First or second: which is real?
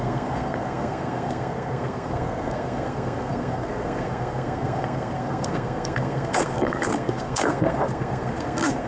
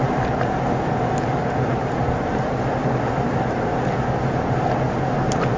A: second